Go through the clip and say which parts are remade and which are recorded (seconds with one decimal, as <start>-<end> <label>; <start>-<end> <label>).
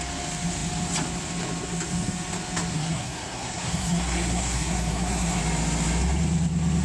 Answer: 0.0-2.7 recorded; 2.7-5.4 remade; 5.4-6.8 recorded